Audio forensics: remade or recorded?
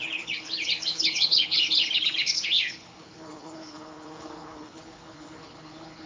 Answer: remade